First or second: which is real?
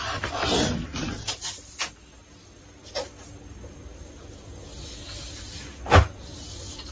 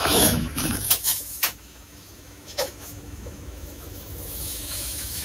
first